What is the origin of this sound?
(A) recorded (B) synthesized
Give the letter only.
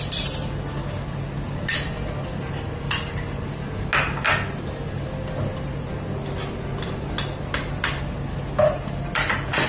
A